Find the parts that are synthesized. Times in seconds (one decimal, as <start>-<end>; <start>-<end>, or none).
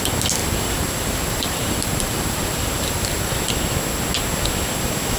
0.4-3.3